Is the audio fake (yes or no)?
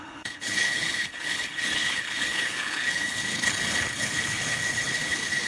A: yes